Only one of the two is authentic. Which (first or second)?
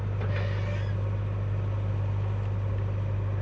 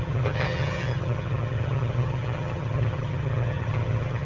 first